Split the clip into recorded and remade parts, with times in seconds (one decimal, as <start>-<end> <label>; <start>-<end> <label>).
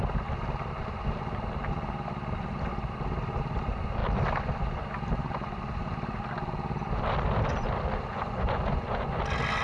0.0-8.1 recorded; 8.1-9.2 remade; 9.2-9.6 recorded